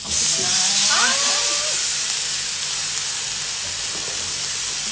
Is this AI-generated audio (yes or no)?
no